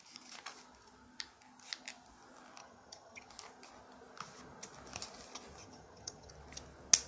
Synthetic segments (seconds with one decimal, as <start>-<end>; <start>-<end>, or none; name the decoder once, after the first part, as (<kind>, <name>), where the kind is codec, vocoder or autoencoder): 2.6-3.3 (vocoder, HiFi-GAN); 5.6-6.3